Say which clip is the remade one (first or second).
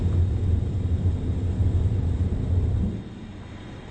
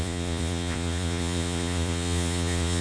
second